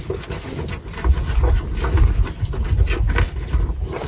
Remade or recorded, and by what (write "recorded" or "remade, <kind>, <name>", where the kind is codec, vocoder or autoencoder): recorded